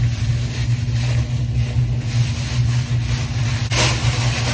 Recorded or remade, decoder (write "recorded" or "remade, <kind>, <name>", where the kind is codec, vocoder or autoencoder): recorded